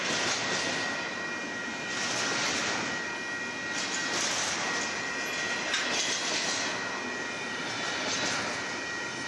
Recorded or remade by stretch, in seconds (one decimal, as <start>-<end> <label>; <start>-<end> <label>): 0.0-9.3 recorded